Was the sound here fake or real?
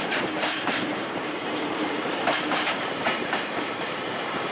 fake